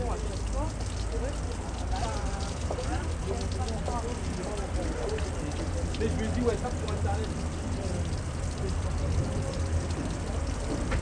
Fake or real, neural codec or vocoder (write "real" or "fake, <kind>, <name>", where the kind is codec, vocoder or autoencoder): real